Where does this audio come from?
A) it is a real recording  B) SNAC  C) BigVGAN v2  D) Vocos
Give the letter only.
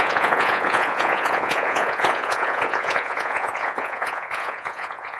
D